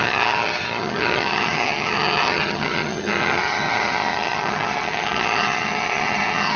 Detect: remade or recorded remade